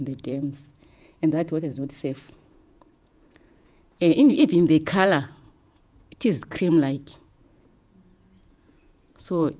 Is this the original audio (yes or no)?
no